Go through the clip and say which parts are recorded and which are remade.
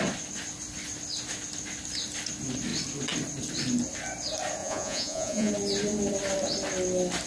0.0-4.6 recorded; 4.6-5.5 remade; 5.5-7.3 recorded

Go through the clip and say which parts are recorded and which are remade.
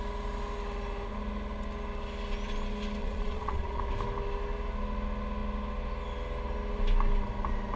0.0-3.0 recorded; 3.0-3.8 remade; 3.8-7.8 recorded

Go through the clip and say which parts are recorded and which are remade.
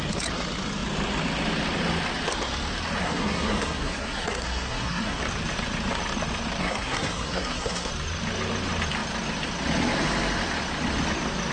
0.0-3.0 recorded; 3.0-5.2 remade; 5.2-6.6 recorded; 6.6-7.9 remade; 7.9-11.5 recorded